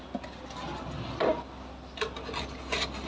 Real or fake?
real